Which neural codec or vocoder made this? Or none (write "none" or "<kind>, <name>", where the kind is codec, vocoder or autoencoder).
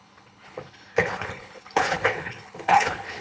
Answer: codec, HILCodec